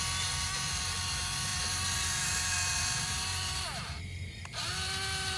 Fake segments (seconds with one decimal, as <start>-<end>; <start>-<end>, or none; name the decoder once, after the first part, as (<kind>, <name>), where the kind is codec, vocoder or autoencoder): none